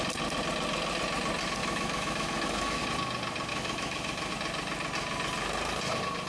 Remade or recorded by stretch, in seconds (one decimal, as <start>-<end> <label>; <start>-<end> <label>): 0.0-1.6 recorded; 1.6-2.8 remade; 2.8-3.5 recorded; 3.5-4.3 remade; 4.3-6.3 recorded